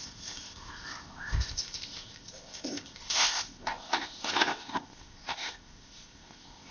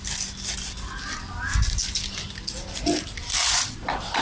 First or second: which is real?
second